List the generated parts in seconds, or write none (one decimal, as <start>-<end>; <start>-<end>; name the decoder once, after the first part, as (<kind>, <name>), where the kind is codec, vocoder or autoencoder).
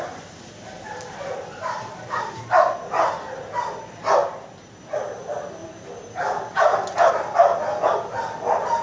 none